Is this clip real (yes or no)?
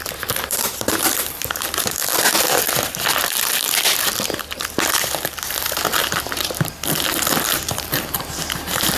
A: no